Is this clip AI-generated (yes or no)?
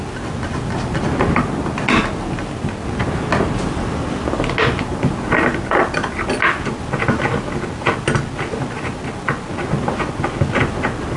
no